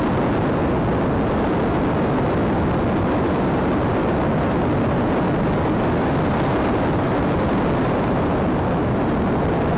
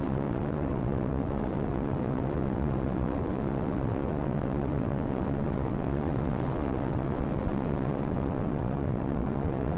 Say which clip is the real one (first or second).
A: first